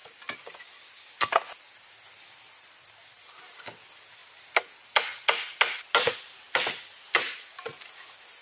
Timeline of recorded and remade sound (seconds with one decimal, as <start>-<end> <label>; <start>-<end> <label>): 0.0-8.4 recorded